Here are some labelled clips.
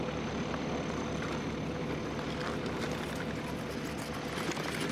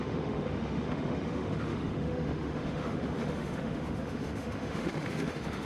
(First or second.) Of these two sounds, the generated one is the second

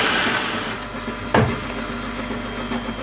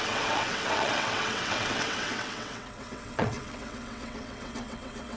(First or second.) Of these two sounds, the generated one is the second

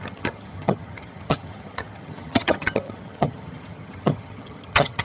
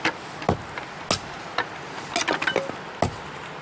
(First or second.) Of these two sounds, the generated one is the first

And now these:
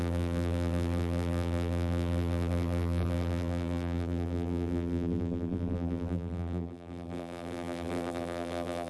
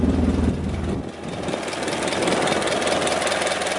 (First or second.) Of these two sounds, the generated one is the first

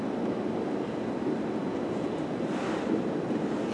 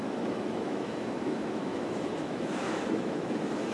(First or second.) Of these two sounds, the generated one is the second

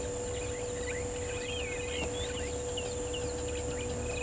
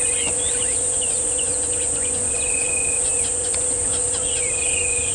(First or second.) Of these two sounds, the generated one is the second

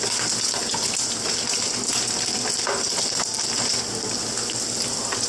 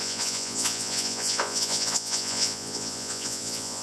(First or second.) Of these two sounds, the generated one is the second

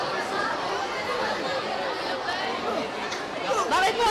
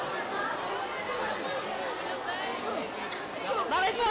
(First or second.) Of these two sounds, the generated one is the first